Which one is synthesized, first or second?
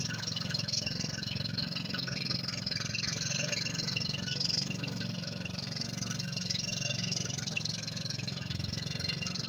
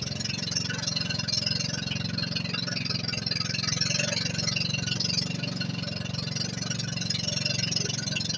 first